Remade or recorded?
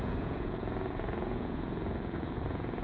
remade